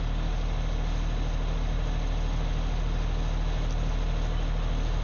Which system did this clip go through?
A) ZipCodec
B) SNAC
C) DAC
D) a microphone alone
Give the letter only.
D